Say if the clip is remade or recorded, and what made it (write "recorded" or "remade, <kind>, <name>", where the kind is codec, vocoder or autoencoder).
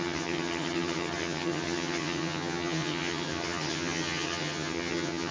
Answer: remade, vocoder, HiFi-GAN